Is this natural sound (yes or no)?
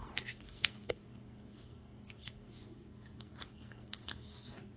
no